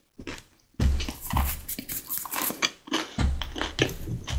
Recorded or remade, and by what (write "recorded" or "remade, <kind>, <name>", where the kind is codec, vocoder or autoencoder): recorded